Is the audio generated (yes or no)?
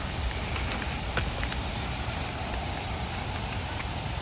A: no